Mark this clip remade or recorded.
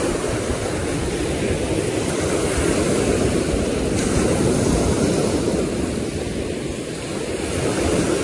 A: recorded